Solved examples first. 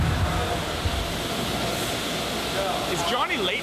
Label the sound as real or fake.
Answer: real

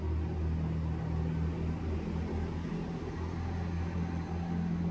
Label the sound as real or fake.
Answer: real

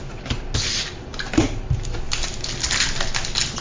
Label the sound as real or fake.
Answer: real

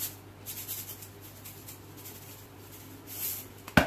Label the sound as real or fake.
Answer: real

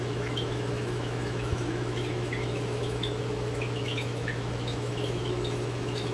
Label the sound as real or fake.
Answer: fake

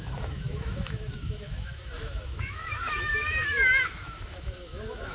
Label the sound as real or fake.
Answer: fake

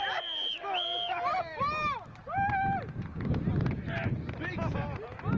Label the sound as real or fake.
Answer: real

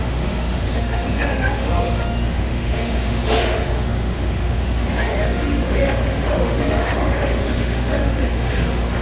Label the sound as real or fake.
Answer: fake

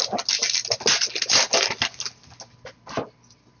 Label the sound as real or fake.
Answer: real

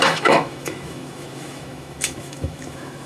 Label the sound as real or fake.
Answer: fake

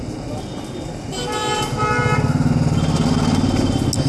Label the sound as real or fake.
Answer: real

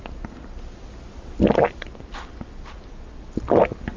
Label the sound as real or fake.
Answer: real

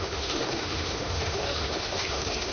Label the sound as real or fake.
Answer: fake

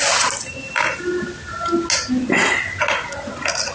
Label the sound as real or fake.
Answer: real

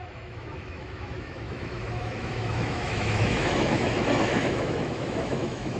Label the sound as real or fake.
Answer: fake